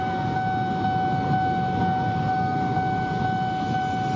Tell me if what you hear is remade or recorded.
recorded